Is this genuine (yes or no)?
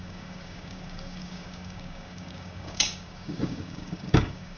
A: no